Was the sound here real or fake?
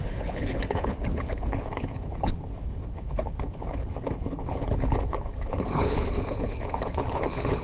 fake